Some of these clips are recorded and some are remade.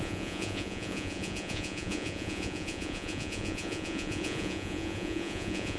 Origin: remade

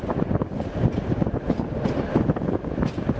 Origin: recorded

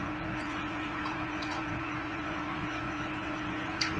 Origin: remade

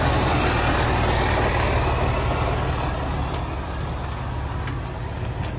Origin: recorded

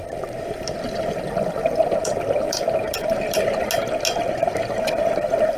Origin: recorded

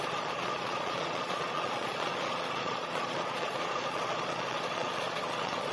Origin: remade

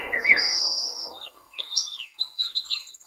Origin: remade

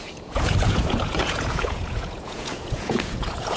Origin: remade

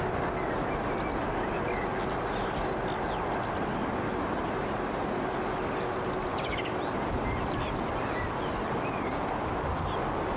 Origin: recorded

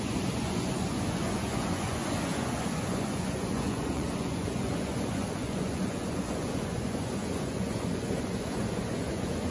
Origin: remade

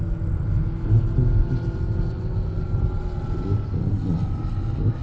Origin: recorded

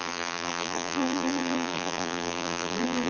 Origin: remade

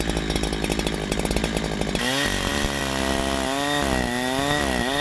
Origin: recorded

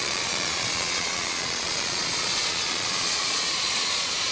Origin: remade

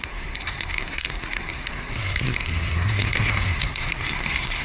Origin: remade